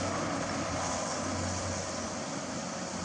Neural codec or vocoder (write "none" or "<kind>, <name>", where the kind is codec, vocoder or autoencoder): none